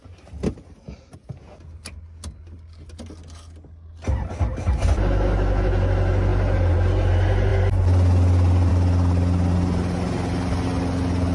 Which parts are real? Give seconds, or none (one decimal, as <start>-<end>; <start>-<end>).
0.0-11.3